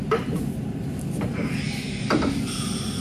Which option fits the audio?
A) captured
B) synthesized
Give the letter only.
A